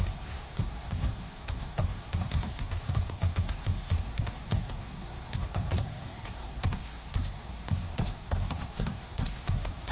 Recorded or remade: remade